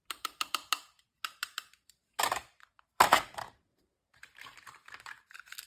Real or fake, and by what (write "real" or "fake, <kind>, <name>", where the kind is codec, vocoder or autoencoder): fake, vocoder, BigVGAN v2